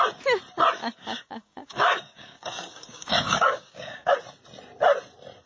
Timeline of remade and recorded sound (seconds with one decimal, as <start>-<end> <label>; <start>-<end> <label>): 0.0-0.8 recorded; 0.8-4.1 remade; 4.1-5.5 recorded